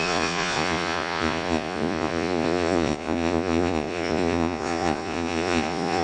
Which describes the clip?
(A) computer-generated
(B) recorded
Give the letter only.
A